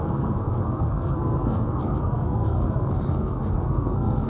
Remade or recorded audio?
remade